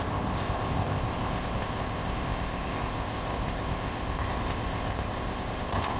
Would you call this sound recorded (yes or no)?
no